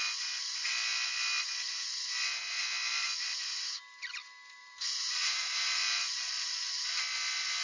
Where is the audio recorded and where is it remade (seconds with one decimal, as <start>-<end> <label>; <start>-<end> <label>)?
0.0-4.6 recorded; 4.6-7.0 remade; 7.0-7.6 recorded